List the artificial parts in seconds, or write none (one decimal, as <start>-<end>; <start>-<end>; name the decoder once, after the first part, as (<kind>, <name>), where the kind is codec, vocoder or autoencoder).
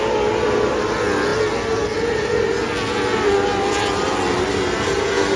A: none